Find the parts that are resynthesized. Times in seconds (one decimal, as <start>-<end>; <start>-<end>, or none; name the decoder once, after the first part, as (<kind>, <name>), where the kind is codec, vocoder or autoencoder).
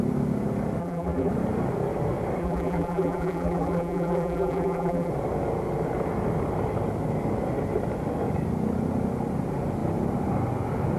0.8-1.3 (vocoder, BigVGAN v2); 2.4-5.1